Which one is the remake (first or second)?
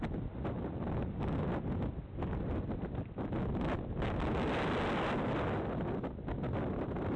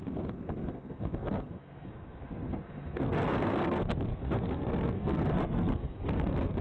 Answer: second